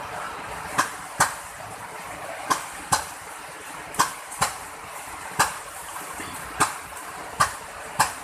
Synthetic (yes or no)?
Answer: yes